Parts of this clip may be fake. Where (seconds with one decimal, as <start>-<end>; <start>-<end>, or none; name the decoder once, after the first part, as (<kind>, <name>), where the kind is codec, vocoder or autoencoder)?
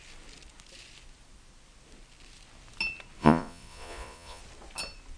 3.2-4.4 (vocoder, Vocos)